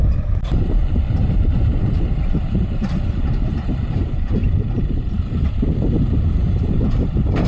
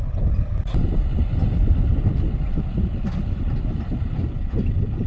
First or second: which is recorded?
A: second